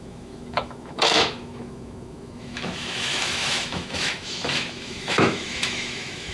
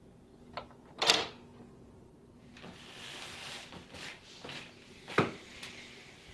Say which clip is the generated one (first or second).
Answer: first